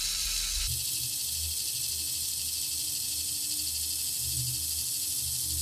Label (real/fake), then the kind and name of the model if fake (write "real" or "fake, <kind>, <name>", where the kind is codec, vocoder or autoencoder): real